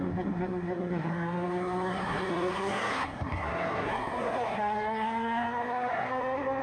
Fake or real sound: fake